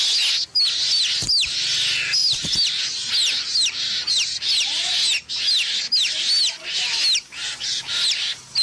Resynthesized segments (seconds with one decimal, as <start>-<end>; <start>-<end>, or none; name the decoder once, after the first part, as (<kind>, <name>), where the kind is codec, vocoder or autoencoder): none